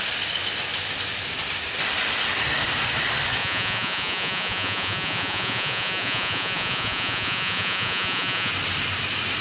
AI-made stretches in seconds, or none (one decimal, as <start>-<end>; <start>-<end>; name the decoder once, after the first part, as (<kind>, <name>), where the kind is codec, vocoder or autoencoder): 3.4-8.5 (vocoder, Vocos)